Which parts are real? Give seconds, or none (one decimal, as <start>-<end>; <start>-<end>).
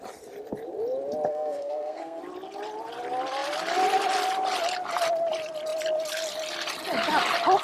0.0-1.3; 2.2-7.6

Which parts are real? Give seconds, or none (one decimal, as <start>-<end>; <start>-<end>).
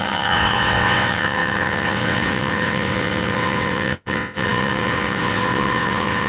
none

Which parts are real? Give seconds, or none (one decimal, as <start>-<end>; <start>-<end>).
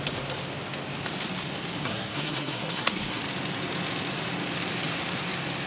0.0-1.8; 3.2-5.7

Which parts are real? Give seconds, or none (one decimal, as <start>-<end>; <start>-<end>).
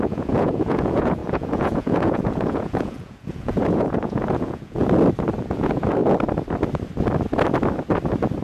4.8-5.4; 6.0-8.4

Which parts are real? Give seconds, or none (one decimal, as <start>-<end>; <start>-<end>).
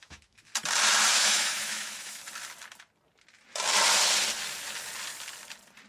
0.5-1.1; 2.2-5.9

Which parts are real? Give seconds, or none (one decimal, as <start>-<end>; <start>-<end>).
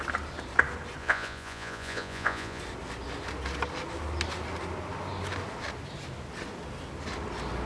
0.0-1.0; 2.6-7.7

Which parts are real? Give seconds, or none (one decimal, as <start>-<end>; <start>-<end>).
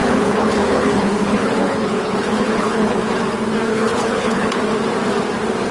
3.0-3.7; 4.6-5.7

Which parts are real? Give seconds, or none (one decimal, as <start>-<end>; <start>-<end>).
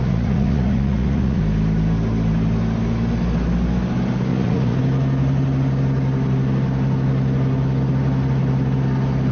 1.4-4.3; 4.8-9.3